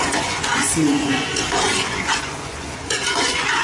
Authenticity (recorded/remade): remade